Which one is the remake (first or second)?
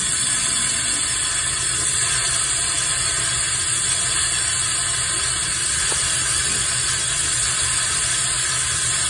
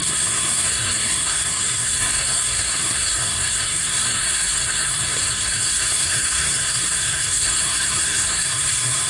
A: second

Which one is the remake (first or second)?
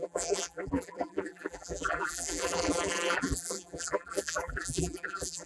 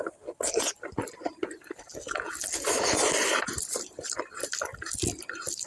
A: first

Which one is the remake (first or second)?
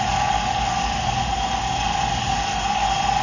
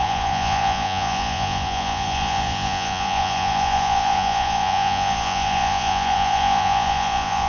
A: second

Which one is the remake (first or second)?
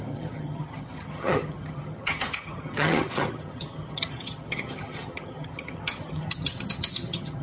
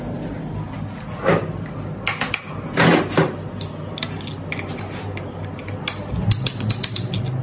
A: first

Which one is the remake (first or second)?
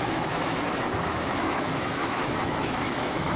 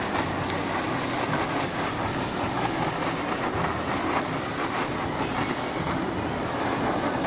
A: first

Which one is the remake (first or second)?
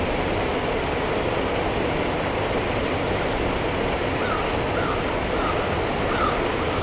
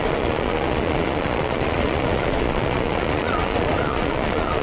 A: second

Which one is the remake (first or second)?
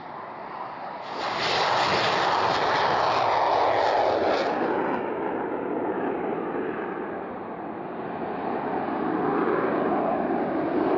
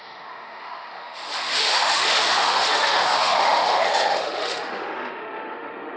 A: second